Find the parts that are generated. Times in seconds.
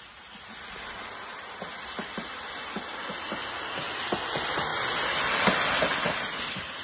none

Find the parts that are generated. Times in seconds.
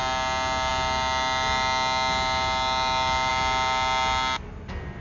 none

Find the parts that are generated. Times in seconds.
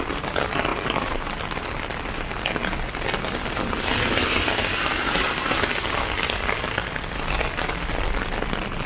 0.7-1.4 (vocoder, BigVGAN v2)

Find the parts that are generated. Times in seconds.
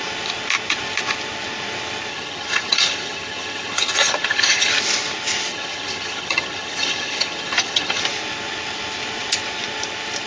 2.1-4.7 (vocoder, HiFi-GAN); 5.5-8.0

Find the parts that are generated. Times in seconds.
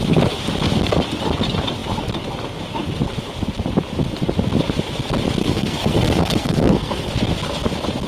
5.4-7.1 (codec, SNAC)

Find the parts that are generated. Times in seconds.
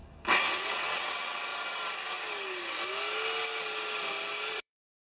0.5-1.5 (vocoder, WaveNeXt); 4.5-5.1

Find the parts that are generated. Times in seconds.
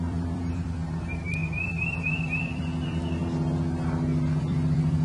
0.0-3.2 (vocoder, BigVGAN v2); 4.4-5.0